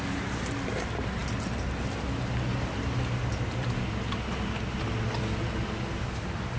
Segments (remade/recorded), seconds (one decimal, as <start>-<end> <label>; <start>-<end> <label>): 0.0-6.6 recorded